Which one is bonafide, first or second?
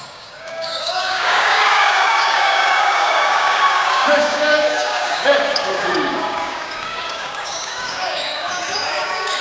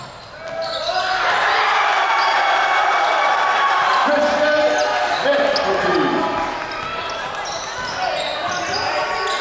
second